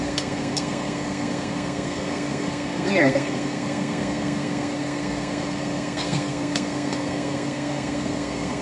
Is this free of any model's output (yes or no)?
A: no